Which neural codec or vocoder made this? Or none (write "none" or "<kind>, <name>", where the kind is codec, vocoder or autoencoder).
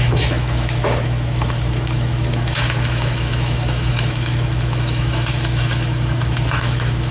autoencoder, DAC-VAE